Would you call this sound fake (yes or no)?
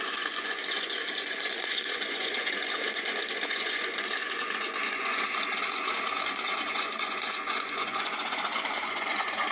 yes